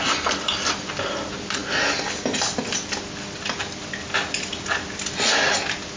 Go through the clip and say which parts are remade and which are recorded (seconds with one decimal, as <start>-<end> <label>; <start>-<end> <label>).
0.0-6.0 recorded